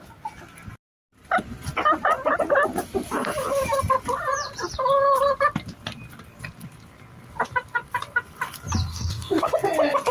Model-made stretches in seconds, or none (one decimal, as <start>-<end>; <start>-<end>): 8.9-9.5